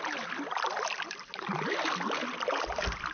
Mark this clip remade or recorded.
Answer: recorded